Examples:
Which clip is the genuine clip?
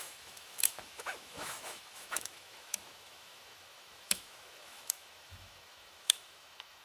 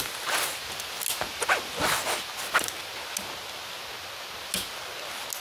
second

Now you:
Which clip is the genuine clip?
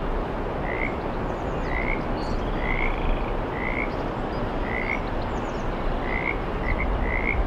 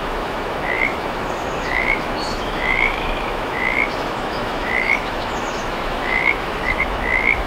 first